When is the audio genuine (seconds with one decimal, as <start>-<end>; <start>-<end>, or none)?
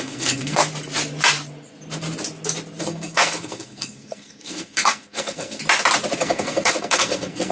0.6-2.8; 5.6-6.2